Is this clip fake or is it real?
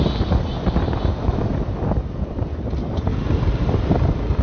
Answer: fake